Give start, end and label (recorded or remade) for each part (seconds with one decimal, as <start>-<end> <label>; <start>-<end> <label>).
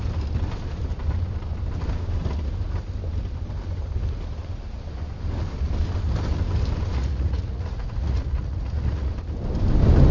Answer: 0.0-7.0 recorded; 7.0-9.1 remade; 9.1-10.1 recorded